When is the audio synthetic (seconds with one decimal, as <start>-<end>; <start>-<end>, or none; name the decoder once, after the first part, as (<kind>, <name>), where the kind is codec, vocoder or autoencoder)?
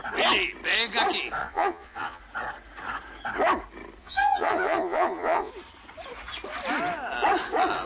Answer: 1.4-2.2 (vocoder, Vocos); 4.0-5.5